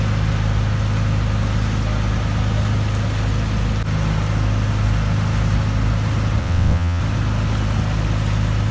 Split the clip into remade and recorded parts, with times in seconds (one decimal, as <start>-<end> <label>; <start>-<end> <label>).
0.0-6.4 recorded; 6.4-7.0 remade; 7.0-8.7 recorded